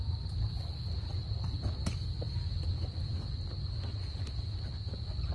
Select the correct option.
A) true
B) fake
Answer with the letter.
A